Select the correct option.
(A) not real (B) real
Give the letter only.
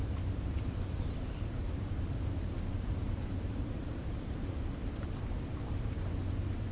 A